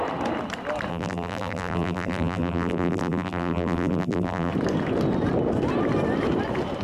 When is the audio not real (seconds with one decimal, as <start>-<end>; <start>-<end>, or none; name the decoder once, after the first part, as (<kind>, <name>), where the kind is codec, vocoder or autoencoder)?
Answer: 0.9-4.5 (vocoder, BigVGAN v2)